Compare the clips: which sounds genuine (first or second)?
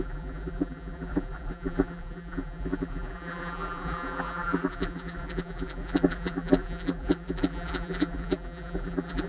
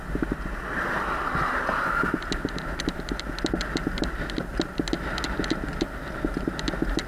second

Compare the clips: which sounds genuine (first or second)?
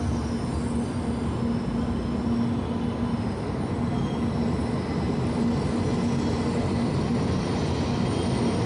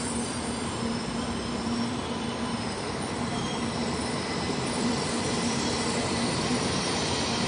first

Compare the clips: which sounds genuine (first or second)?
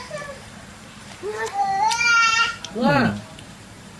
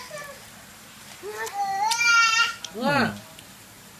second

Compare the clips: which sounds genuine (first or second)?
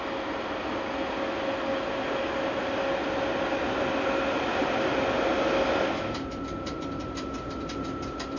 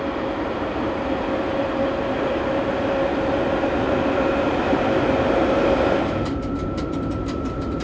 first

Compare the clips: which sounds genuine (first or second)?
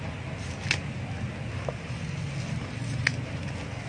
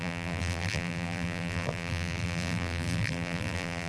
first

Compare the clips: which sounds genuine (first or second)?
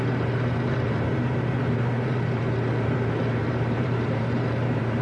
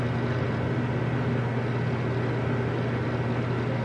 second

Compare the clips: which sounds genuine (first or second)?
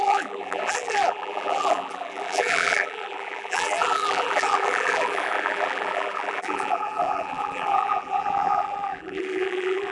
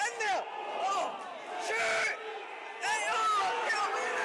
second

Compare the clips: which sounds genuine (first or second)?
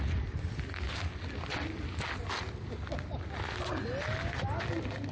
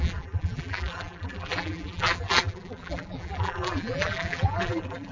first